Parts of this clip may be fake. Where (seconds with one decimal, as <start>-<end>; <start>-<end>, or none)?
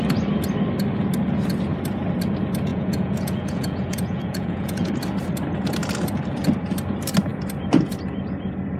2.7-4.9